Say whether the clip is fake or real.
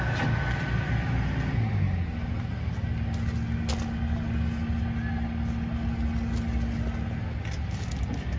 real